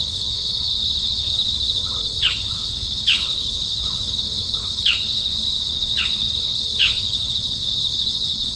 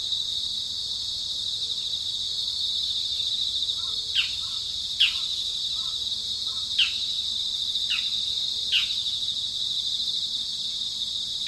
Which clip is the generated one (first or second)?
first